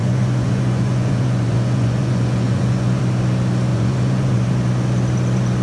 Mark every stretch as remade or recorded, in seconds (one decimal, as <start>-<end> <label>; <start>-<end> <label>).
0.0-3.0 remade; 3.0-3.7 recorded; 3.7-4.5 remade; 4.5-5.6 recorded